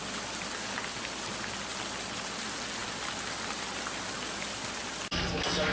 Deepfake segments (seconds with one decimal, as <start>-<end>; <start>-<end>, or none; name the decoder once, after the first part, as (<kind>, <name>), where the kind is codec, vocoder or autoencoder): none